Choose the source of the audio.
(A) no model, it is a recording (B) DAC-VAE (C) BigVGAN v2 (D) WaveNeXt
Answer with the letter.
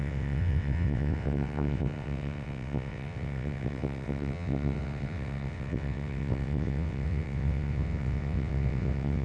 D